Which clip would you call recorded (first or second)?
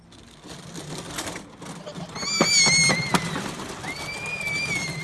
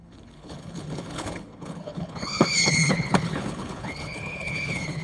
first